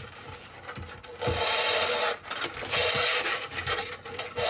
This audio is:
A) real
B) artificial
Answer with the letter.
A